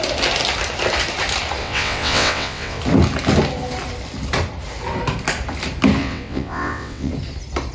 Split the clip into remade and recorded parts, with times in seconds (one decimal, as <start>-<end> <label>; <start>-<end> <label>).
0.0-1.6 recorded; 1.6-2.8 remade; 2.8-6.0 recorded; 6.0-7.1 remade; 7.1-7.7 recorded